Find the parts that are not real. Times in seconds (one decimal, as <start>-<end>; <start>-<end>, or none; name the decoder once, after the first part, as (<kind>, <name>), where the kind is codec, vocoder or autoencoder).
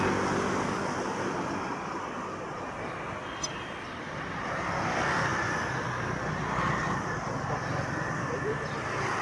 none